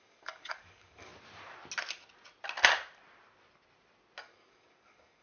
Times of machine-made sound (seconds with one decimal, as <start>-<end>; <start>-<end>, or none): 0.0-1.1; 4.2-5.2